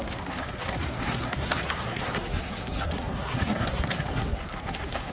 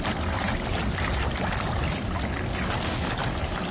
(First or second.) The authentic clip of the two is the second